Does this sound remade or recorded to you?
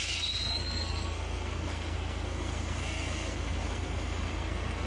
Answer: remade